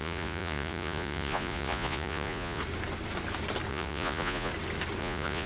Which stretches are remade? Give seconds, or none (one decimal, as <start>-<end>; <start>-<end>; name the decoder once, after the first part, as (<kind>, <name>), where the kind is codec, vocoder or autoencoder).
0.0-2.6 (vocoder, Vocos); 3.7-4.5; 5.0-5.5